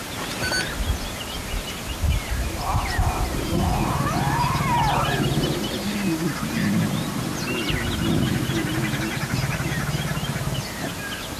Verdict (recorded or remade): recorded